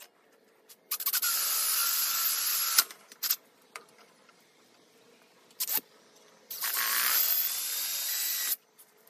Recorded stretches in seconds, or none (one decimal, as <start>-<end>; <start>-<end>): none